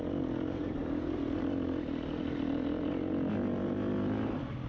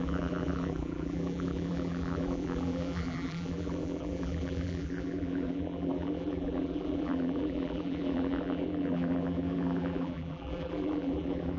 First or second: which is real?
first